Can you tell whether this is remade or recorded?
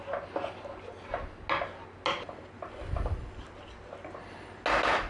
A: recorded